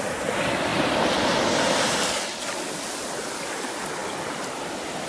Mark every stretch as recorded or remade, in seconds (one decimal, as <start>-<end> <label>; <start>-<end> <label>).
0.0-0.7 recorded; 0.7-2.2 remade; 2.2-5.1 recorded